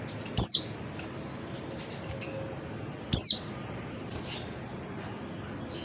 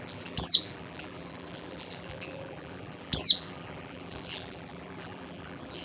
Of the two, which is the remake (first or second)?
second